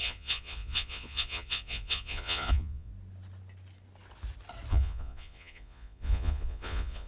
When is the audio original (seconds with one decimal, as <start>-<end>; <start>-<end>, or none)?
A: 2.9-4.7